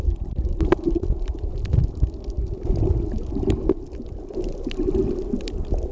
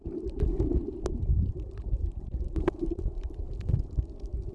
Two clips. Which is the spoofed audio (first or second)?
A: second